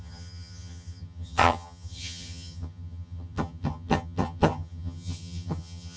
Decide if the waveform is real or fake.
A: fake